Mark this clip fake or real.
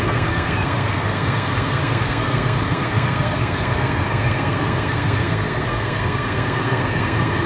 fake